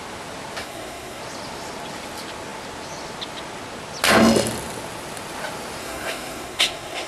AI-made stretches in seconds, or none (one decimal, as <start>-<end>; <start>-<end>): 0.6-1.2; 5.8-7.1